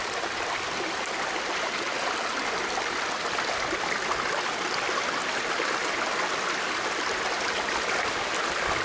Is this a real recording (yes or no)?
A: yes